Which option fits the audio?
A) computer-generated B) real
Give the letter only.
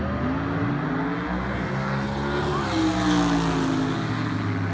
B